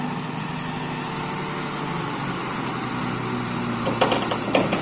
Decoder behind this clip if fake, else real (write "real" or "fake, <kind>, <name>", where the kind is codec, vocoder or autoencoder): real